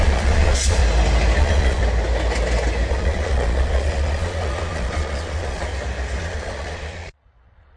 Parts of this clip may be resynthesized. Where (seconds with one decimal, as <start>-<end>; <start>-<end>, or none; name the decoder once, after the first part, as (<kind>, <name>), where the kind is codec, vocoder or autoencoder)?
0.0-0.8 (vocoder, Vocos); 1.4-1.8; 2.9-5.7; 6.2-7.8